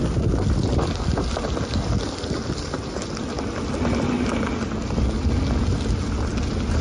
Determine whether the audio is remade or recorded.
recorded